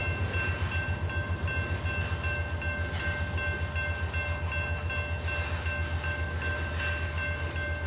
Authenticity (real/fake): real